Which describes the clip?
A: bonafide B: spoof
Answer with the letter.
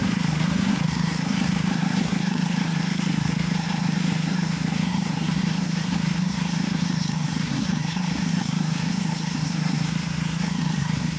B